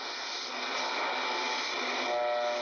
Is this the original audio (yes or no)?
yes